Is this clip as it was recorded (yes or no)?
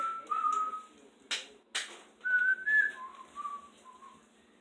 yes